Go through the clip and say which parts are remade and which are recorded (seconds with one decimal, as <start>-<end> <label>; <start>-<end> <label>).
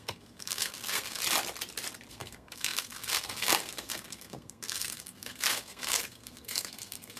0.0-1.2 remade; 1.2-2.1 recorded; 2.1-7.2 remade